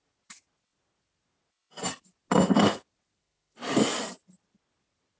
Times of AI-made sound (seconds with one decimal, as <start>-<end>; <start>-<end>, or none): 3.9-4.7